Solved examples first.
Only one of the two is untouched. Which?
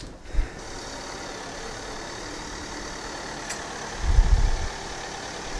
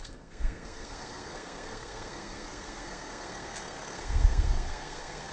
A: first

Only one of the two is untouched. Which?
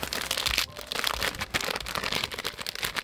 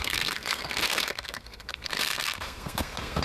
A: first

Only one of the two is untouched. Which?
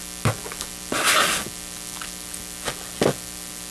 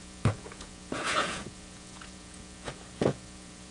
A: first